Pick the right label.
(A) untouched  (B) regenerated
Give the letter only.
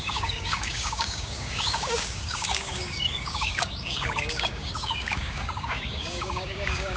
B